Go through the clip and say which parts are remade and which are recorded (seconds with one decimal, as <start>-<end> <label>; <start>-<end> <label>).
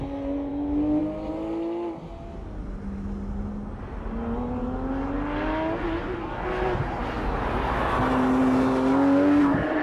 0.0-9.8 recorded